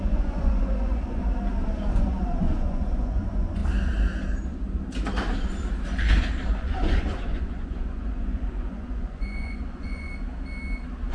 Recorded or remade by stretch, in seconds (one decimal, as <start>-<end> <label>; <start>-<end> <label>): 0.0-1.2 remade; 1.2-1.9 recorded; 1.9-3.6 remade; 3.6-6.5 recorded; 6.5-10.1 remade; 10.1-11.1 recorded